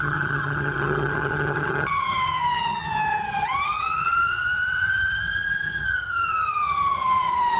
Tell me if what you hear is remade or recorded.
remade